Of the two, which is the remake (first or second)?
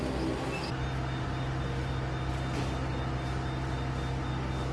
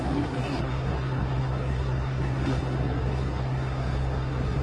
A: second